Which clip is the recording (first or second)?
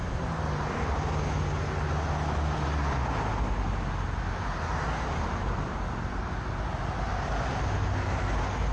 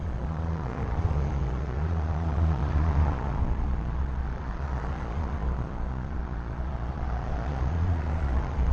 first